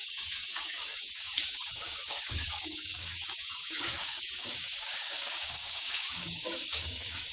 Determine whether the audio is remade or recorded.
remade